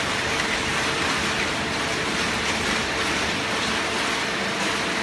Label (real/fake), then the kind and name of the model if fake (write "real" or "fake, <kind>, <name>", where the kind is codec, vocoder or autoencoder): real